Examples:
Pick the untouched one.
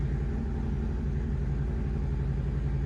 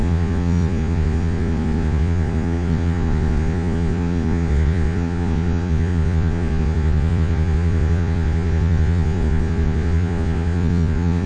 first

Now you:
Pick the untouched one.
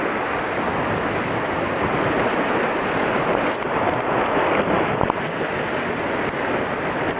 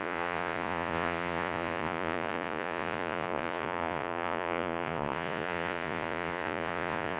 first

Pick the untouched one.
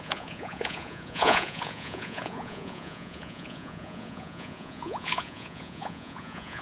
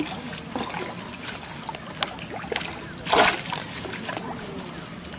second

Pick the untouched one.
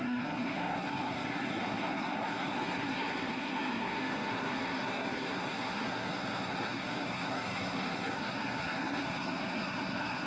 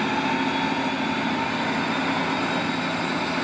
second